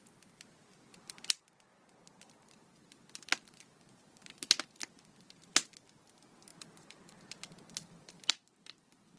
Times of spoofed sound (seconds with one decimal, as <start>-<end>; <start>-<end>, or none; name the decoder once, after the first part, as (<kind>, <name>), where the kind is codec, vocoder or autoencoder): 6.5-7.2 (vocoder, BigVGAN v2)